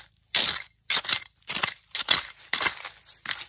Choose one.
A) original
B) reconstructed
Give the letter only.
A